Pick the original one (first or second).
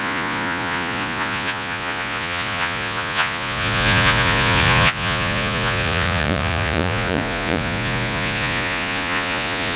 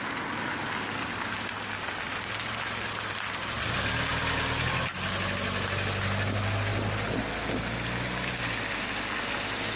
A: second